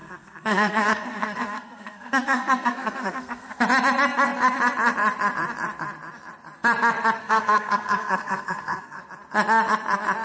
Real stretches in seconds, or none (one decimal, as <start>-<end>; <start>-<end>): 3.6-7.2; 9.0-10.2

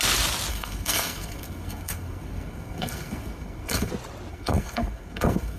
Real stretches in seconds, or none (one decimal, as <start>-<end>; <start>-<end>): 0.0-0.5; 3.9-4.3